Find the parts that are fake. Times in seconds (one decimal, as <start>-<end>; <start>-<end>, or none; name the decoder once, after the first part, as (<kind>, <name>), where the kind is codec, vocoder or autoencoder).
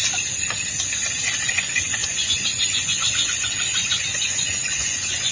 1.5-5.3 (vocoder, Vocos)